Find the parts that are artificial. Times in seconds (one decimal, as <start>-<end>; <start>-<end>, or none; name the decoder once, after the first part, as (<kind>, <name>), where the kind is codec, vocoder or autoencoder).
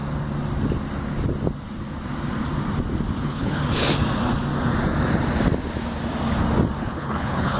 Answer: 3.2-3.6 (codec, HILCodec); 6.8-7.6